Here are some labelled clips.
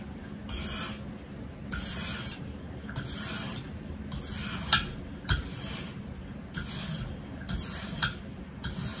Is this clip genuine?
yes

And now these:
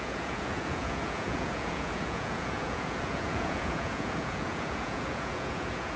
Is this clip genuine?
no